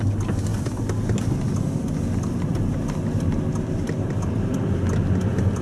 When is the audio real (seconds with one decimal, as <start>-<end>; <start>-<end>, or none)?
0.0-5.6